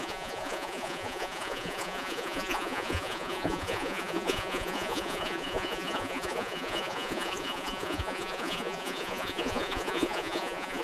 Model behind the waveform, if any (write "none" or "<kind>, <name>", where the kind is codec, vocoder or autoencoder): vocoder, Vocos